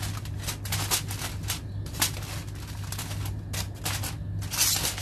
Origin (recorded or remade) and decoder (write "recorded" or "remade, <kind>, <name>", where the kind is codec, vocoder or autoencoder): recorded